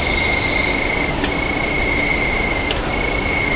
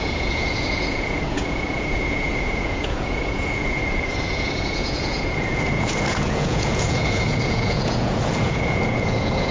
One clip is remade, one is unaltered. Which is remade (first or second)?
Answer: second